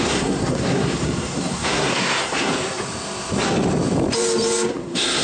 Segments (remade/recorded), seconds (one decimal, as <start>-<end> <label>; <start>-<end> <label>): 0.0-2.5 remade; 2.5-4.7 recorded; 4.7-5.2 remade